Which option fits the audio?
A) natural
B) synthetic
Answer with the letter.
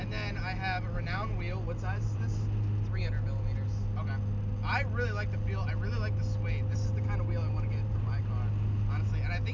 A